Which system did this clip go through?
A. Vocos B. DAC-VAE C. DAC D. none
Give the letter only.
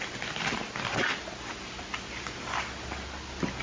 D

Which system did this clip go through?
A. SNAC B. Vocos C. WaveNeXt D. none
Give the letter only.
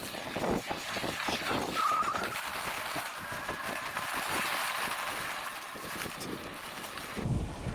D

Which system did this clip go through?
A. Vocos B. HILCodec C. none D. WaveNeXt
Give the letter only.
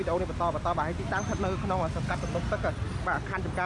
C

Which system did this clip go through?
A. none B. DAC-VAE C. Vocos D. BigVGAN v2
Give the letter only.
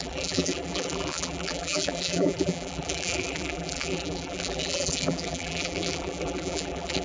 D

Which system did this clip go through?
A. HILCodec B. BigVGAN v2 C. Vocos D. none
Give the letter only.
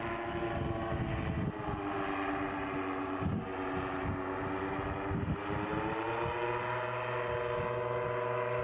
D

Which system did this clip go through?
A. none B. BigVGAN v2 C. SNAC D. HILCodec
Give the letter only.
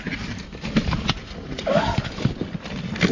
A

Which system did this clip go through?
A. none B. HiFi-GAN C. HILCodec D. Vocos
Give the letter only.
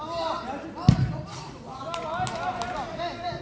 A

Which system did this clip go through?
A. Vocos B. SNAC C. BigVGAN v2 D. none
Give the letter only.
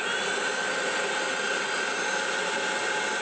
D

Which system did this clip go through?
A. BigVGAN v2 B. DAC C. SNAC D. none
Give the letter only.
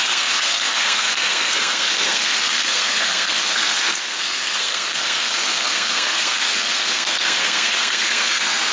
C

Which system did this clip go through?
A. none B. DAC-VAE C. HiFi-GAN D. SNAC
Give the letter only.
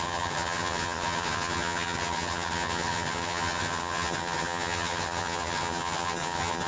C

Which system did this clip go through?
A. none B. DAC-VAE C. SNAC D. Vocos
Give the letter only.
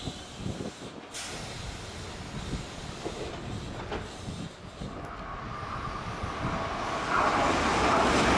A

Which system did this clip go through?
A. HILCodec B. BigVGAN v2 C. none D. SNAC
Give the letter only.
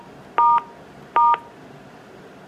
C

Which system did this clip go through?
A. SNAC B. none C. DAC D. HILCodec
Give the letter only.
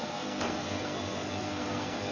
A